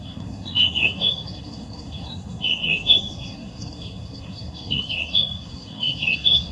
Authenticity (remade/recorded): remade